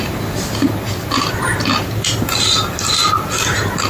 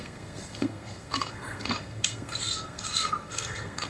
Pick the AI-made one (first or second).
second